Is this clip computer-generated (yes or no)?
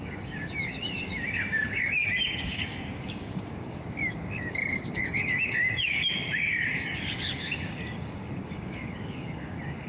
yes